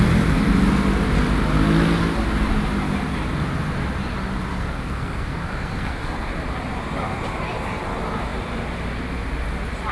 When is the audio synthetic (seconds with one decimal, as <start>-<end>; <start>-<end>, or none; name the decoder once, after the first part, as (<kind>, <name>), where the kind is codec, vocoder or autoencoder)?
4.5-6.3 (codec, SNAC)